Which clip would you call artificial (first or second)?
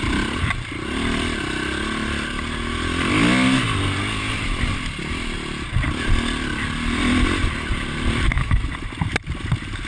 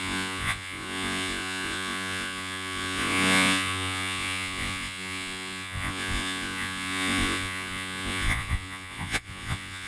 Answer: second